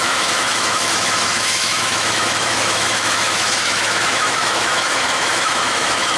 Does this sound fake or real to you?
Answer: fake